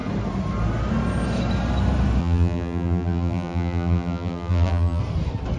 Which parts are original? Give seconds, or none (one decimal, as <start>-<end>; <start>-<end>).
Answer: 0.0-2.2; 5.0-5.6